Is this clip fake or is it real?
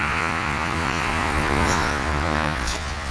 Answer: fake